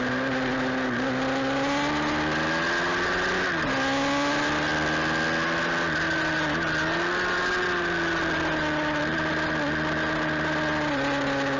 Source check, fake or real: real